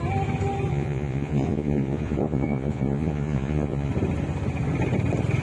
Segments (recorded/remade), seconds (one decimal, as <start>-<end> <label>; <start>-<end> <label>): 0.0-0.7 recorded; 0.7-3.9 remade; 3.9-5.4 recorded